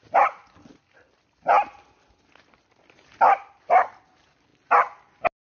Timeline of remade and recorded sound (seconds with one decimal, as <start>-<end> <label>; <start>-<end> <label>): 0.0-5.5 recorded